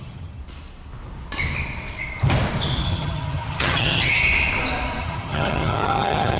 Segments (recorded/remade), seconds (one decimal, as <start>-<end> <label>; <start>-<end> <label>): 0.0-0.4 remade; 0.4-2.8 recorded; 2.8-4.2 remade; 4.2-5.0 recorded; 5.0-6.4 remade